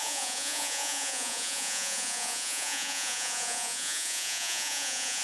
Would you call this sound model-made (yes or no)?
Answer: yes